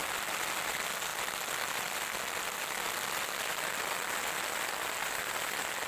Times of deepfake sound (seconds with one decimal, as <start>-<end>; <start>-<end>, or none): none